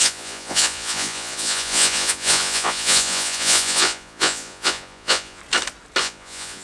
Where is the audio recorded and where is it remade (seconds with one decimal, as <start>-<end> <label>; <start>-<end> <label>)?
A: 0.0-5.4 remade; 5.4-6.0 recorded; 6.0-6.6 remade